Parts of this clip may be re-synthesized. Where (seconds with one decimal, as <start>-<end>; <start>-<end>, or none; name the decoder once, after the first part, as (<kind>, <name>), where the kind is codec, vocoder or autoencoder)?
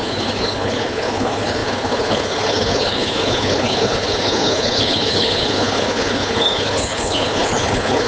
0.0-8.1 (codec, HILCodec)